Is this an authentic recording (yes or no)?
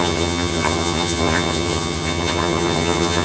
no